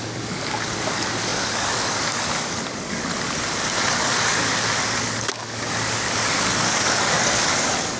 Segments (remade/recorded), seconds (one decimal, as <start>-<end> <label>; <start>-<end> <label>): 0.0-3.1 remade; 3.1-3.9 recorded; 3.9-8.0 remade